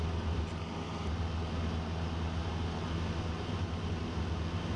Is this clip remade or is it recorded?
recorded